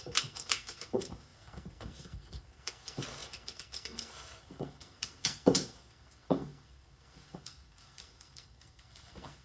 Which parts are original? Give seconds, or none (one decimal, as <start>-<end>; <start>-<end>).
none